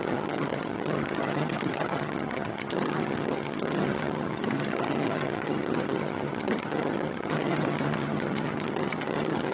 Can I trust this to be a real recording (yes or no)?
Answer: no